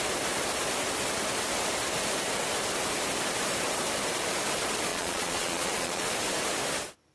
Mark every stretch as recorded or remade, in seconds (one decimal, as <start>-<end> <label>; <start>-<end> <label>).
0.0-4.9 recorded; 4.9-6.1 remade; 6.1-7.1 recorded

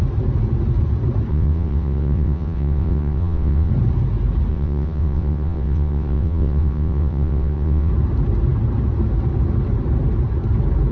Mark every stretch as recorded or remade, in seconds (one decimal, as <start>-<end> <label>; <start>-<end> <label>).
0.0-1.3 recorded; 1.3-3.7 remade; 3.7-4.5 recorded; 4.5-7.9 remade; 7.9-10.9 recorded

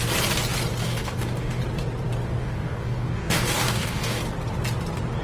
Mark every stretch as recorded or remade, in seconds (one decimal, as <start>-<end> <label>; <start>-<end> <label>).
0.0-0.8 recorded; 0.8-1.6 remade; 1.6-2.4 recorded; 2.4-4.2 remade; 4.2-5.2 recorded

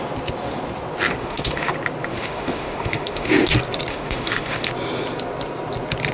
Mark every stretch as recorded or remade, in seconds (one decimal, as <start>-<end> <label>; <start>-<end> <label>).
0.0-1.2 recorded; 1.2-1.7 remade; 1.7-2.1 recorded; 2.1-3.3 remade; 3.3-3.9 recorded; 3.9-4.7 remade; 4.7-6.1 recorded

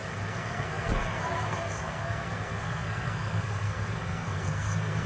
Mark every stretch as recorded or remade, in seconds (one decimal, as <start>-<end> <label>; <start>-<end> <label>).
0.0-5.1 remade